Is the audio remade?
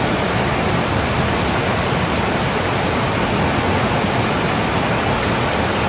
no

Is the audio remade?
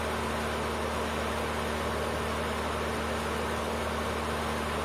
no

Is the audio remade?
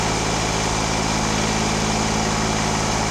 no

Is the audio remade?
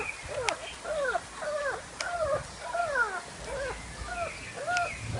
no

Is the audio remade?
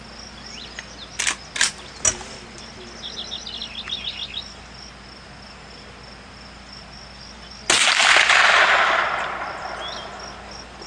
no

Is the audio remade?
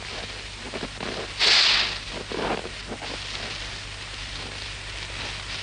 no